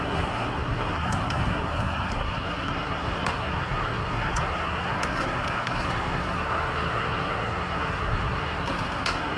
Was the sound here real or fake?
fake